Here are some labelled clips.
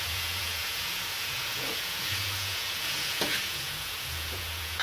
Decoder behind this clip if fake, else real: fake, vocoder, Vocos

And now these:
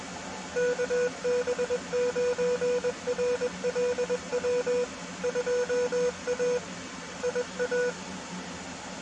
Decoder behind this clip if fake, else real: real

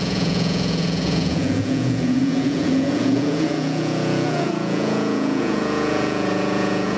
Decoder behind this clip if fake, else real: fake, vocoder, Vocos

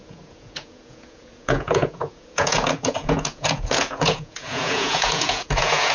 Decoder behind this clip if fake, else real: fake, vocoder, Vocos